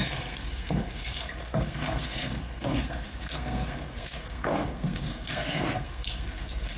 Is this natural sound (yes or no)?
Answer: no